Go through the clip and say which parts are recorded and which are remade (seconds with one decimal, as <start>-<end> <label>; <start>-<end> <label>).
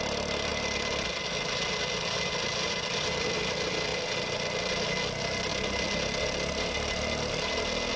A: 0.0-8.0 recorded